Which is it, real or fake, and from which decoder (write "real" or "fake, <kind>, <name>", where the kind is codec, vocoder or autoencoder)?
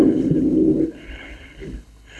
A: fake, codec, HILCodec